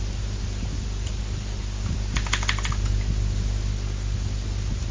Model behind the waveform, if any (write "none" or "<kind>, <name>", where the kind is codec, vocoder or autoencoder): none